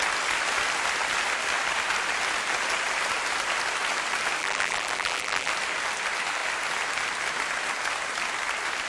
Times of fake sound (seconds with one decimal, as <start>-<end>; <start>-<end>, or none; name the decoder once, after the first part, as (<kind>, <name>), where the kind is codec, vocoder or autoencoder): 4.4-5.5 (vocoder, BigVGAN v2)